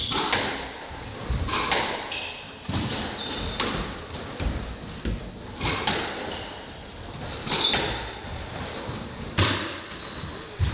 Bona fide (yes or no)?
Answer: yes